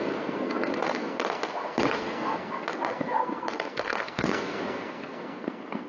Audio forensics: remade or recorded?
remade